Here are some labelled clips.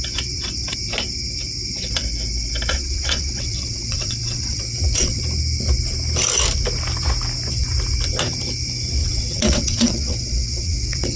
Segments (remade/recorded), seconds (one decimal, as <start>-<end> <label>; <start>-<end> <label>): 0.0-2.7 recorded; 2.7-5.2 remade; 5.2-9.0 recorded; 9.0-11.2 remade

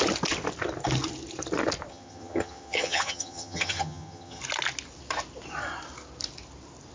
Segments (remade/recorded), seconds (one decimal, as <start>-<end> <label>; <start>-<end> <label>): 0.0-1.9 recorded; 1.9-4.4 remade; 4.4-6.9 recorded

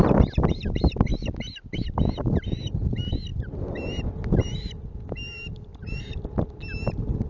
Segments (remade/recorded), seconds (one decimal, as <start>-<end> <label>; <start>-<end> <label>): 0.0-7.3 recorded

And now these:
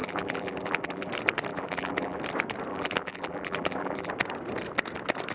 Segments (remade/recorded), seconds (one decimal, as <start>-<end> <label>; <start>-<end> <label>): 0.0-1.1 remade; 1.1-1.5 recorded; 1.5-2.2 remade; 2.2-2.7 recorded; 2.7-4.1 remade; 4.1-5.3 recorded

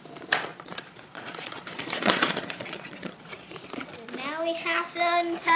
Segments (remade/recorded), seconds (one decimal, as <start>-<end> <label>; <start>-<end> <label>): 0.0-0.5 recorded; 0.5-3.9 remade; 3.9-5.6 recorded